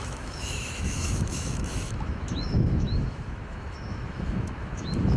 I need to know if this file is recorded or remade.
remade